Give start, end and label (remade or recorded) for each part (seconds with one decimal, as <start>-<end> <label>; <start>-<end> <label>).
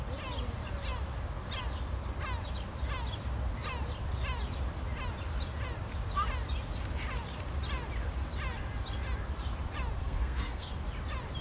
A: 0.0-10.0 recorded; 10.0-10.7 remade; 10.7-11.4 recorded